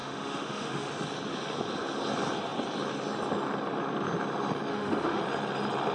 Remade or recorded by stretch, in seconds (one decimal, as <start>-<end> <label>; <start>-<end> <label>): 0.0-0.9 remade; 0.9-4.7 recorded; 4.7-5.2 remade; 5.2-5.9 recorded